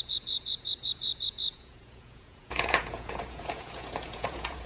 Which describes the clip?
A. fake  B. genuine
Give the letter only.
A